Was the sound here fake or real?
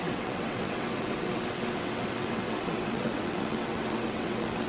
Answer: fake